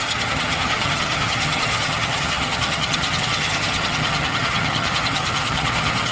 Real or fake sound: fake